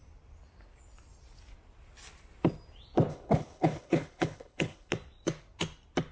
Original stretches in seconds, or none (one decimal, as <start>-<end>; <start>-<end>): 0.0-3.1; 4.9-6.1